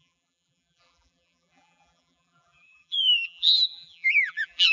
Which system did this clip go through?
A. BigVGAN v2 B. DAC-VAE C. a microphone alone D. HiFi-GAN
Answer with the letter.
A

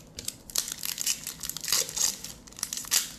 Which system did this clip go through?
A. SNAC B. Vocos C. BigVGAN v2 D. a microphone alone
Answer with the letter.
D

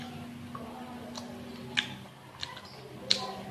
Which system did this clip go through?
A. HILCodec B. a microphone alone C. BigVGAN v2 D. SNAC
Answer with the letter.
B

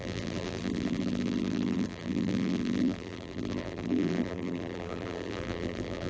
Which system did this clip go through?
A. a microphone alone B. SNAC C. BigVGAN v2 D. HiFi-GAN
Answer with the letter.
C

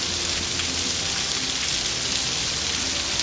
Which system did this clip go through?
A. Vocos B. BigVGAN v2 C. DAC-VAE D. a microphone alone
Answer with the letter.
D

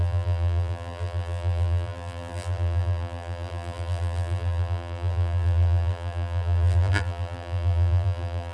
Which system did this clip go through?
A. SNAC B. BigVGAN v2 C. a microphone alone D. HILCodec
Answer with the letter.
B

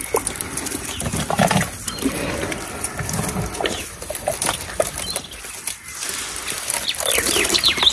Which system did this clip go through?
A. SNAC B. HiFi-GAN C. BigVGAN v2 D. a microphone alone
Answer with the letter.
D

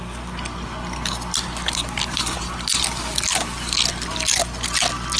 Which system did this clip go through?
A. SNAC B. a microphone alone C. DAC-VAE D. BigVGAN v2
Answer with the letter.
B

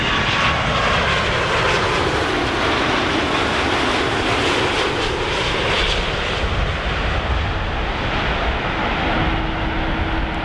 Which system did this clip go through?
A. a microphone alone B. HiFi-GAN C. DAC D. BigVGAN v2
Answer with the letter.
A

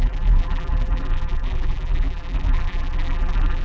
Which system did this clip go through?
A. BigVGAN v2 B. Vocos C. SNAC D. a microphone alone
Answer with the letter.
A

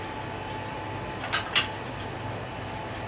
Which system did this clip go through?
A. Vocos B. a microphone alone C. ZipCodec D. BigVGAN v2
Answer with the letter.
B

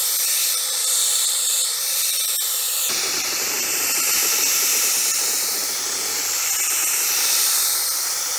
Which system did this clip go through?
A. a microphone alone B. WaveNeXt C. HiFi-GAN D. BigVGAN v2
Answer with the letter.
D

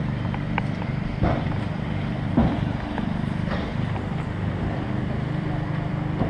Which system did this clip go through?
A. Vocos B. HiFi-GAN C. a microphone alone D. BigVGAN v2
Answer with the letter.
D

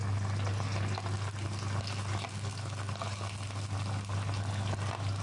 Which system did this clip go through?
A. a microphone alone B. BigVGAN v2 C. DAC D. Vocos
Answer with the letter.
A